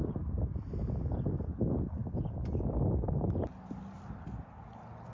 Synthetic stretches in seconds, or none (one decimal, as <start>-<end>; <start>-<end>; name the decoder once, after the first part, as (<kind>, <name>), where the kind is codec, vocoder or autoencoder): none